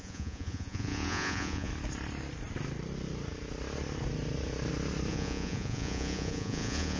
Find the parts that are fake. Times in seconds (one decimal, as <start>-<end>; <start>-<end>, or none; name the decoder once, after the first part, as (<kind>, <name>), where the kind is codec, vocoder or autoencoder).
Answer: 0.0-1.7 (vocoder, Vocos); 5.1-7.0